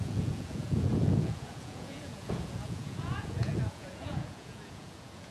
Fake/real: fake